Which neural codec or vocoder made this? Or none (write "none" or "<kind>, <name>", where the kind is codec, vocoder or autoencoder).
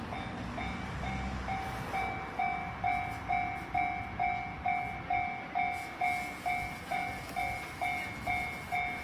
none